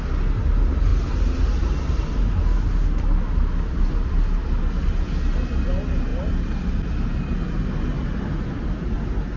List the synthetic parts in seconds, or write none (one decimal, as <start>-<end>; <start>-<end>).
none